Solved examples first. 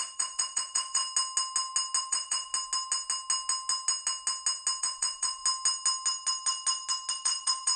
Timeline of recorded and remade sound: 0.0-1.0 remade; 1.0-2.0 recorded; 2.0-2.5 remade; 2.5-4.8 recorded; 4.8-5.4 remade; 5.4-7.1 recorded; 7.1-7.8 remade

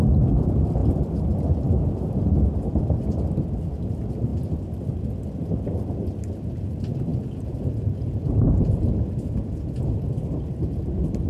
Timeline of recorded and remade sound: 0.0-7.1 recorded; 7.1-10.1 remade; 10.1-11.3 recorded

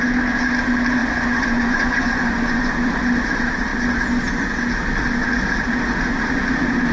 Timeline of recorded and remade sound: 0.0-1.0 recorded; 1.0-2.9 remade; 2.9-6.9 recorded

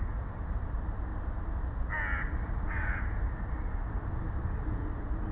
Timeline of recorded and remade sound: 0.0-5.3 recorded